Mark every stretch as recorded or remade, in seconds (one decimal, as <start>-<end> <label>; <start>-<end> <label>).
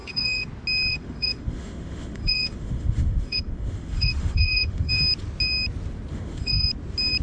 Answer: 0.0-0.5 remade; 0.5-0.9 recorded; 0.9-4.9 remade; 4.9-6.1 recorded; 6.1-6.7 remade; 6.7-7.2 recorded